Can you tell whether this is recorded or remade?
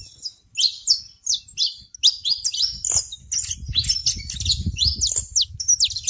recorded